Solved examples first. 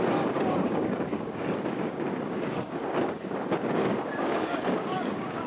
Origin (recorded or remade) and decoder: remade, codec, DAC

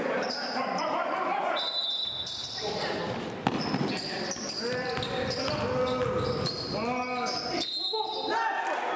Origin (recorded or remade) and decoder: recorded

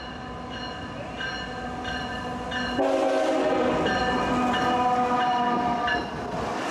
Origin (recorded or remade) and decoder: recorded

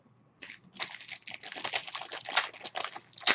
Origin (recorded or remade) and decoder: recorded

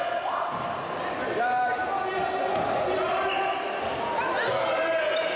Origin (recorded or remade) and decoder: recorded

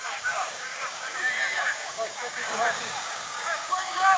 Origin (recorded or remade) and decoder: remade, codec, DAC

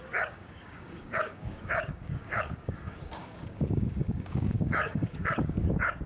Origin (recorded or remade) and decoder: remade, codec, DAC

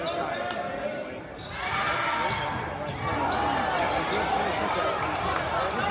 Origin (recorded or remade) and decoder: recorded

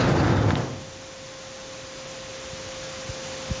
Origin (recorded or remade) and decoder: recorded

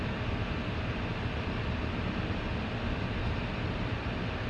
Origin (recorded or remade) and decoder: recorded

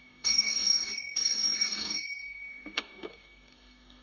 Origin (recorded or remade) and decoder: remade, codec, DAC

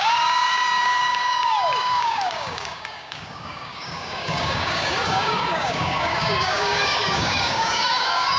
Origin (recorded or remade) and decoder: remade, codec, DAC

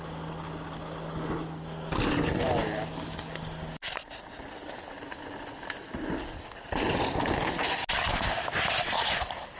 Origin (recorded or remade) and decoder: recorded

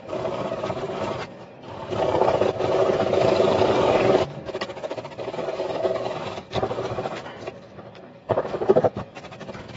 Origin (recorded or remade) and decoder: remade, codec, DAC